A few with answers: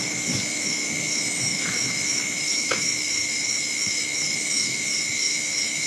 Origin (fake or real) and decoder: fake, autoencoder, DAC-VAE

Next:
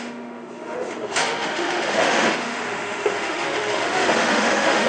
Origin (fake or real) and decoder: fake, autoencoder, DAC-VAE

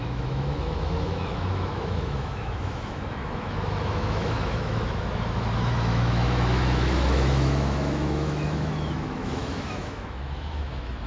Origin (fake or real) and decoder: fake, autoencoder, DAC-VAE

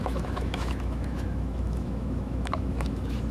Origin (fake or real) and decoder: fake, autoencoder, DAC-VAE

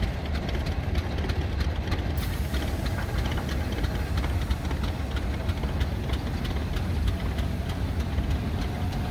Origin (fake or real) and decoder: real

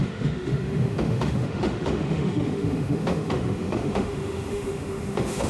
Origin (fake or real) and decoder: fake, autoencoder, DAC-VAE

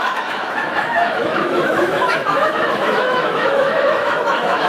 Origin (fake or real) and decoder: fake, autoencoder, DAC-VAE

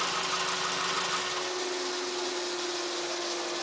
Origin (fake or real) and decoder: real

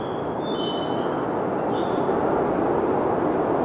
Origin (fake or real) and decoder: real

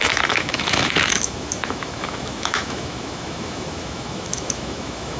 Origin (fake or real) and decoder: fake, autoencoder, DAC-VAE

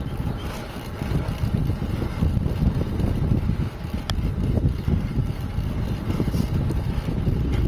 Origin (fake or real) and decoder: real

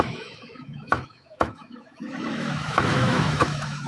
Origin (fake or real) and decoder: fake, autoencoder, DAC-VAE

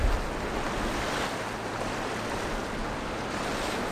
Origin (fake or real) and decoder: real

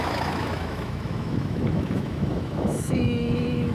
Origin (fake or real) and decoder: fake, autoencoder, DAC-VAE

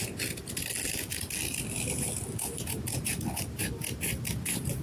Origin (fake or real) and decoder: real